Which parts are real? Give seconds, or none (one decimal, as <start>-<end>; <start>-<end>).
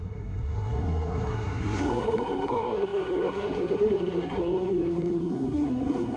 none